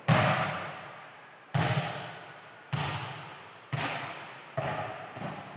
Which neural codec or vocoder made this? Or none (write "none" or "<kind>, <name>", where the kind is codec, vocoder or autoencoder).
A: none